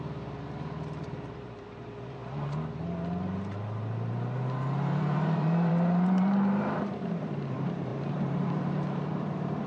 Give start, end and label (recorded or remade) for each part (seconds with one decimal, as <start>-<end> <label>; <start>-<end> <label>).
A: 0.0-9.7 remade